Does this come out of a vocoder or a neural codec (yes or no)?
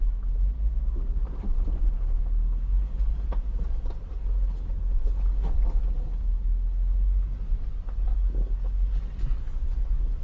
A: no